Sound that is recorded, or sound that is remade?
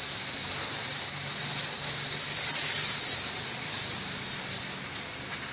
recorded